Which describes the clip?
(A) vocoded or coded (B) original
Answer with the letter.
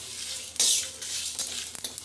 B